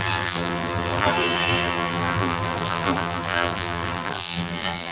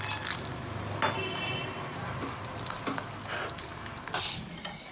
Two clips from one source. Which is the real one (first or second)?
second